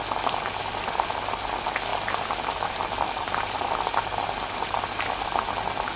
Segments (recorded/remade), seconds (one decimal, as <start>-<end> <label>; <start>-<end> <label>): 0.0-6.0 recorded